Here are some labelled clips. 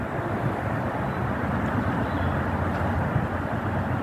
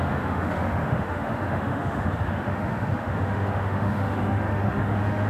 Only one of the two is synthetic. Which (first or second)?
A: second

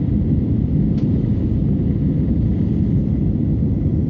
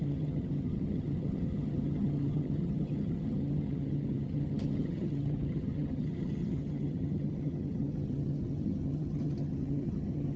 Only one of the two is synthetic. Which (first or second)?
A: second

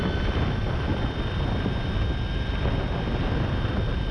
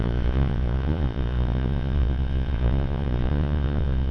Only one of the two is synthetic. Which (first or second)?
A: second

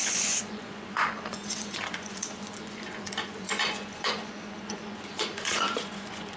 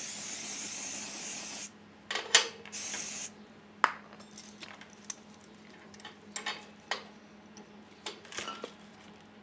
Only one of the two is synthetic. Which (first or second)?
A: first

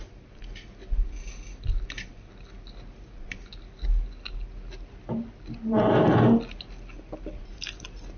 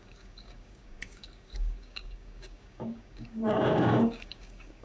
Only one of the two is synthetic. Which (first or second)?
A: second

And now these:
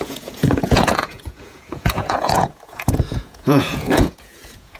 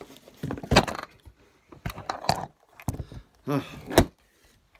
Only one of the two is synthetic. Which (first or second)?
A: first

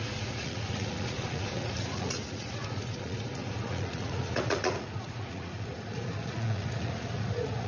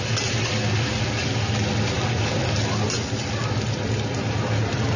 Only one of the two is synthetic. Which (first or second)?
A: first